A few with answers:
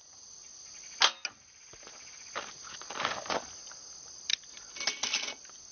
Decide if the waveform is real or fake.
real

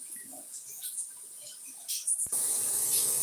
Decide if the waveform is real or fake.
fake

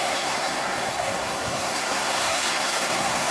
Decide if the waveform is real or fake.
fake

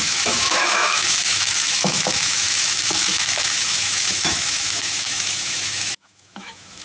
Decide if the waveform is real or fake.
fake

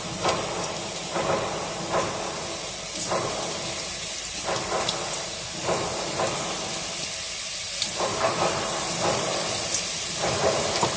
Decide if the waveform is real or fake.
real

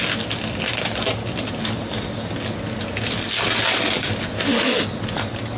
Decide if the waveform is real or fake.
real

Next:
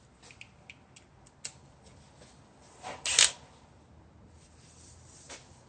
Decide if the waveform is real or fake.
real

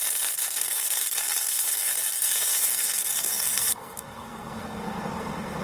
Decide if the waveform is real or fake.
fake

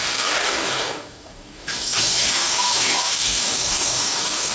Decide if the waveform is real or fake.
fake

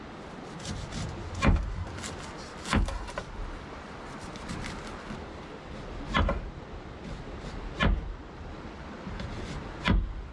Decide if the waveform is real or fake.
real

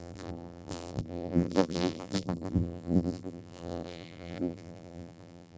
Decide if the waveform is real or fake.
fake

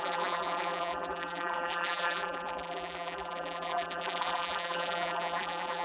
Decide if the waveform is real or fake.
fake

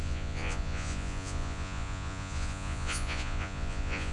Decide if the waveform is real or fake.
fake